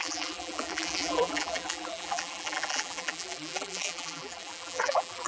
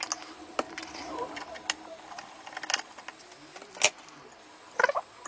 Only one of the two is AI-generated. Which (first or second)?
first